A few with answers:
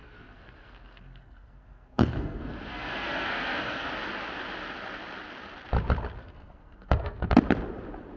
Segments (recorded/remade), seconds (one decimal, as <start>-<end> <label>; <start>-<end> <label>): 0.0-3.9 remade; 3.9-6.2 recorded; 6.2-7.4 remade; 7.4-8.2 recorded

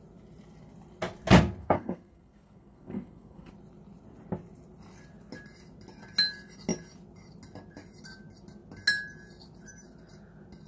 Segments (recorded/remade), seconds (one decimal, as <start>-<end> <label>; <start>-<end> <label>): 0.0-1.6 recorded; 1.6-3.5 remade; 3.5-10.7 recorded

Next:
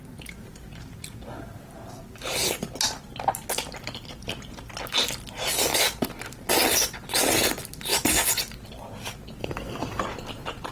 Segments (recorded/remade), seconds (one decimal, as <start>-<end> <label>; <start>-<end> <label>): 0.0-9.4 recorded; 9.4-10.0 remade; 10.0-10.7 recorded

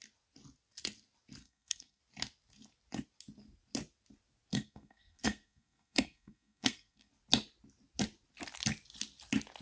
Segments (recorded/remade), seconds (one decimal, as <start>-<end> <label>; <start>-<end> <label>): 0.0-1.4 recorded; 1.4-2.0 remade; 2.0-4.5 recorded; 4.5-7.1 remade; 7.1-9.6 recorded

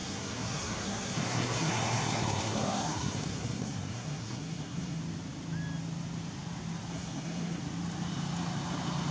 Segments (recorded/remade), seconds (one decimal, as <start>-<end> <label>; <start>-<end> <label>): 0.0-5.0 remade; 5.0-6.9 recorded; 6.9-7.6 remade; 7.6-9.1 recorded